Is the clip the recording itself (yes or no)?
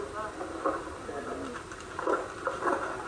yes